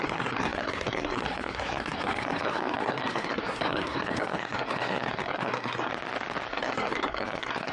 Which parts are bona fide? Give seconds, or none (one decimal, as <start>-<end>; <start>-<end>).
5.9-6.5